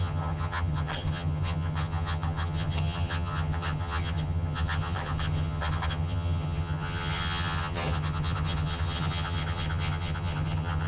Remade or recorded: remade